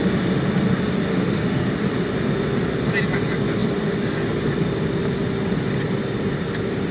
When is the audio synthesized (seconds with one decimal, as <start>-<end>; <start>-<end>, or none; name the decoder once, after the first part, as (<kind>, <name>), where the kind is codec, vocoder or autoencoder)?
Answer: 1.1-1.7 (autoencoder, DAC-VAE)